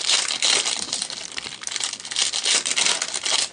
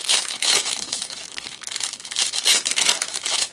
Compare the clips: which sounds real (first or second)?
first